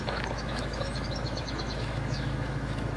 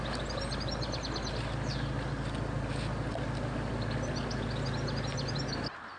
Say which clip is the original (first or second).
second